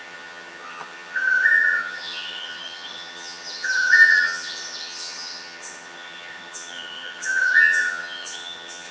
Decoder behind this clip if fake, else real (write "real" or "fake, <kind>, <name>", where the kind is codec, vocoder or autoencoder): fake, vocoder, HiFi-GAN